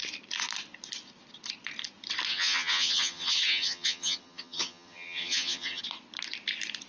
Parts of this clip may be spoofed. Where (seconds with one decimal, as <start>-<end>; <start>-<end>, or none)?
2.3-5.8